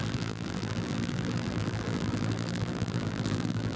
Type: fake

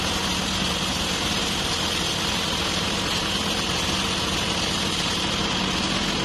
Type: real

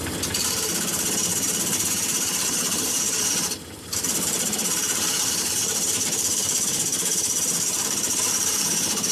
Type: fake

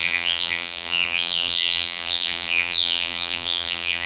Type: fake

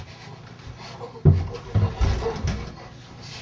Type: real